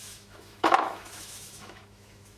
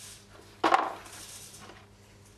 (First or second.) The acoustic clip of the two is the second